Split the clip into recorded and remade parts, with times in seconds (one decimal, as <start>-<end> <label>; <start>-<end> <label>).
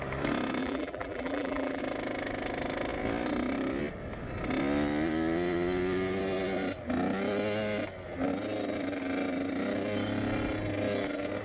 0.0-0.6 recorded; 0.6-1.8 remade; 1.8-11.4 recorded